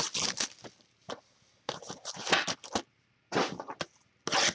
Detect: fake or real real